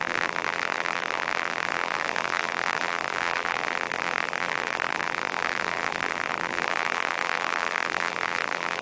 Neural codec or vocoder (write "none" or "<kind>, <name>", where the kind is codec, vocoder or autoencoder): vocoder, BigVGAN v2